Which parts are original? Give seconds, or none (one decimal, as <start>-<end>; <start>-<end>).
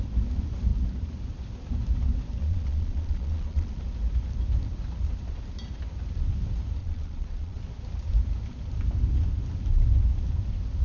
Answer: 0.0-2.4; 3.8-6.8; 7.6-10.8